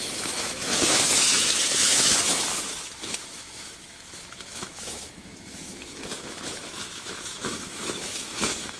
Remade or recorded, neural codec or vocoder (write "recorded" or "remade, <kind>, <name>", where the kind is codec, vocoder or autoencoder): remade, autoencoder, DAC-VAE